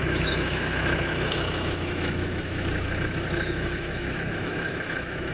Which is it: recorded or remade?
remade